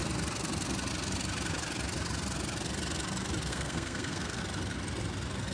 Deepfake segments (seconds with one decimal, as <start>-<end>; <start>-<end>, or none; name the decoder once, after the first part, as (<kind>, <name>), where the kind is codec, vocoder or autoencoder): 3.5-4.4 (codec, SNAC)

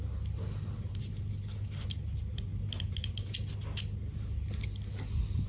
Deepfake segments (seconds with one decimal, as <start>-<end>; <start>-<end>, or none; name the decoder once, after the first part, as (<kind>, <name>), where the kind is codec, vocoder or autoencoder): none

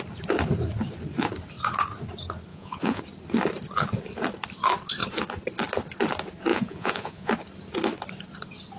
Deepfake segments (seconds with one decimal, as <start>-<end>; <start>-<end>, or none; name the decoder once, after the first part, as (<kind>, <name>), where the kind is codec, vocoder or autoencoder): 2.5-3.0 (vocoder, Vocos); 6.5-7.3

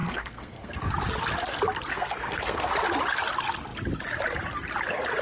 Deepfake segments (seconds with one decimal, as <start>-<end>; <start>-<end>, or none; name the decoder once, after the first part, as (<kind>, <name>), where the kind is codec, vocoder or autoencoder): 0.0-0.9 (codec, SNAC); 1.9-2.7

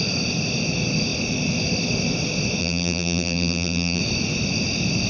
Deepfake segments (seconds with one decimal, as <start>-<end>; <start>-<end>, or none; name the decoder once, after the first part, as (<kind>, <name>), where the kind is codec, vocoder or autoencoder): 2.6-4.0 (vocoder, BigVGAN v2)

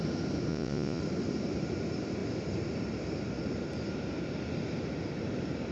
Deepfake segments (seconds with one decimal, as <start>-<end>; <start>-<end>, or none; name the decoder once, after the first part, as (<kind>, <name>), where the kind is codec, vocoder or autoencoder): 0.5-1.0 (vocoder, Vocos)